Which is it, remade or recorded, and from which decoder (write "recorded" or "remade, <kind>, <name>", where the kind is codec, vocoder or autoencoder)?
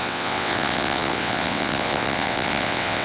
remade, vocoder, WaveNeXt